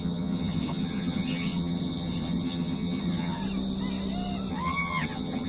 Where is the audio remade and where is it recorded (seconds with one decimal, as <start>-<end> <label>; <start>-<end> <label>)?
0.0-3.4 remade; 3.4-4.5 recorded; 4.5-5.5 remade